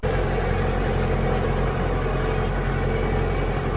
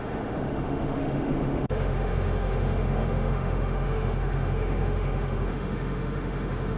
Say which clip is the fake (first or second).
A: second